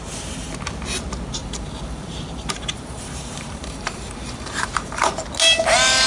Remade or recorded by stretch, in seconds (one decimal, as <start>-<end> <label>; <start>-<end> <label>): 0.0-1.4 recorded; 1.4-5.1 remade; 5.1-6.1 recorded